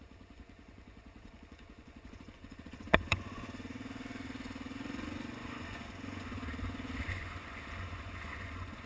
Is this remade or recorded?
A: remade